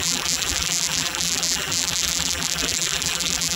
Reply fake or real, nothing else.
fake